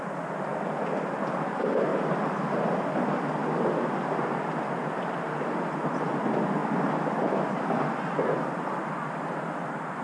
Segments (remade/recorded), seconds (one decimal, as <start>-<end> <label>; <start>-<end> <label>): 0.0-10.0 recorded